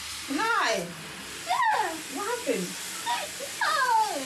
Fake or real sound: real